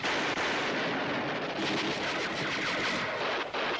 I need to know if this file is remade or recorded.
recorded